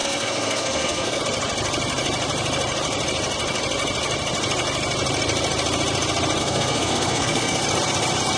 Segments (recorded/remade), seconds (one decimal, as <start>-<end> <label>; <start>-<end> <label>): 0.0-1.2 remade; 1.2-6.4 recorded; 6.4-7.6 remade; 7.6-8.4 recorded